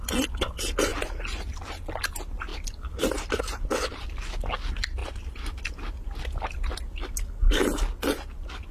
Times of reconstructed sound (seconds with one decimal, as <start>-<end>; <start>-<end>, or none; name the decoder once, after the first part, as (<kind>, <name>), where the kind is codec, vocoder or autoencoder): none